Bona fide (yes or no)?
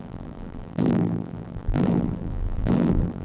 no